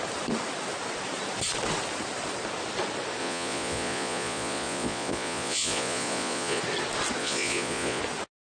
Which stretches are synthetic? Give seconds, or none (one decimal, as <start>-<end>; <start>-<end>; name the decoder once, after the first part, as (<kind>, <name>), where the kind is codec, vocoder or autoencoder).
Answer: 3.2-6.6 (vocoder, Vocos); 7.2-8.0